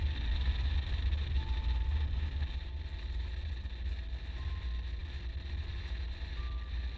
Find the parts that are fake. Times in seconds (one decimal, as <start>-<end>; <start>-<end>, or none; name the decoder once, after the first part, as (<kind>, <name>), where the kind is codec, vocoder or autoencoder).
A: none